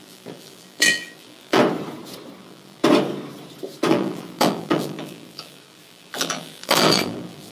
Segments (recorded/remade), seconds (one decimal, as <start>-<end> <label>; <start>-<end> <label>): 0.0-1.6 remade; 1.6-2.4 recorded; 2.4-2.8 remade; 2.8-3.9 recorded; 3.9-7.5 remade